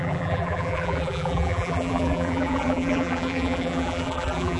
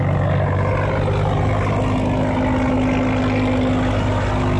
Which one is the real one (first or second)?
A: second